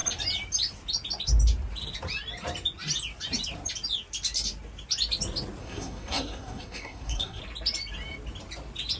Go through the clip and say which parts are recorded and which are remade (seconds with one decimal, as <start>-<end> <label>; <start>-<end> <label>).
0.0-5.6 recorded; 5.6-7.4 remade; 7.4-9.0 recorded